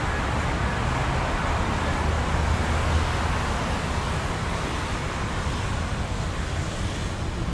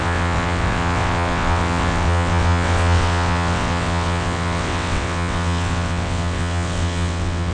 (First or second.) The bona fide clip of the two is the first